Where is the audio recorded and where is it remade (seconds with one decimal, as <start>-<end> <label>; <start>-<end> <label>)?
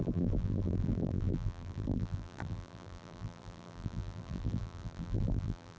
0.0-5.8 remade